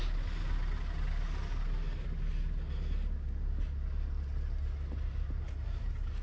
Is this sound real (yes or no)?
yes